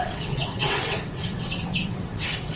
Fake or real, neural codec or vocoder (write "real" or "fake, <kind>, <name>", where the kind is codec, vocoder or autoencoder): fake, vocoder, WaveNeXt